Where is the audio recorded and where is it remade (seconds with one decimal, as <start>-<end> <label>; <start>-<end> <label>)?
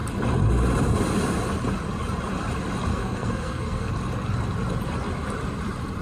0.0-2.9 recorded; 2.9-3.9 remade; 3.9-6.0 recorded